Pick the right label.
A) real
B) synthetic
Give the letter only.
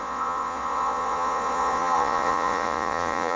B